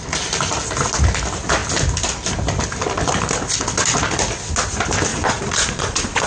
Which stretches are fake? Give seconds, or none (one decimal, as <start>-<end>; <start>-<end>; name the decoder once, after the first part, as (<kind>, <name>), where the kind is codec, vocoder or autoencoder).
5.1-6.3 (vocoder, Vocos)